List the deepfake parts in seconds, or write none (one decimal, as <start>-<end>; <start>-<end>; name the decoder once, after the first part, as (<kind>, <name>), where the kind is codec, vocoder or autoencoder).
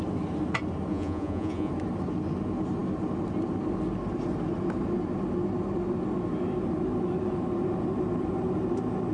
0.9-1.7 (vocoder, Vocos)